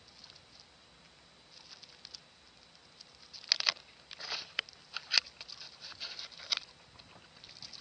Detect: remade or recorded recorded